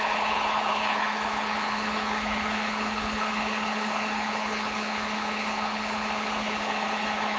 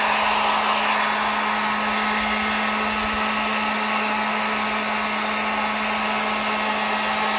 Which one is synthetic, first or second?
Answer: first